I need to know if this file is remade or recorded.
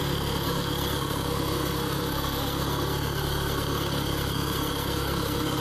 remade